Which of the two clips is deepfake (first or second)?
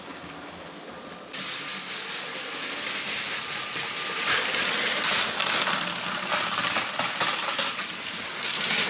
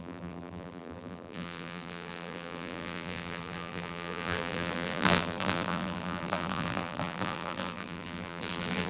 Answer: second